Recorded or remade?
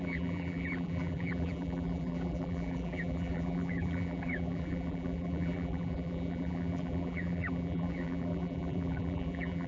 remade